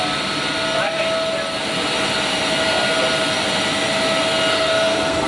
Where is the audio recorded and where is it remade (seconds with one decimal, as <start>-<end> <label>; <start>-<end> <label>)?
0.0-4.5 recorded; 4.5-5.3 remade